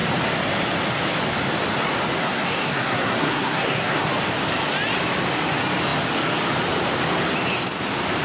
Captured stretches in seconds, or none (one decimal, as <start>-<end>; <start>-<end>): 0.0-2.2; 4.1-8.2